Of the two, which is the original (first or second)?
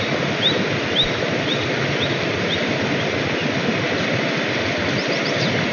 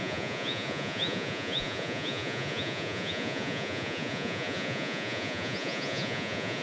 first